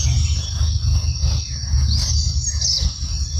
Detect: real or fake real